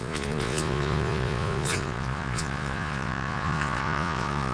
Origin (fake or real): fake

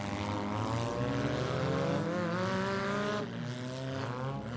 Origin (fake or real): real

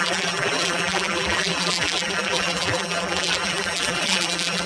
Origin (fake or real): fake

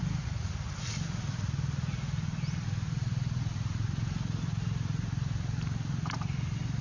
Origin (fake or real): real